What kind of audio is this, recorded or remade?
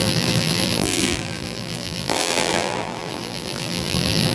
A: remade